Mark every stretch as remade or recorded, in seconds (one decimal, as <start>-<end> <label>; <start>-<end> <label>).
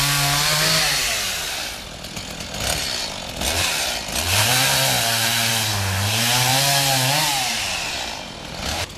0.0-9.0 recorded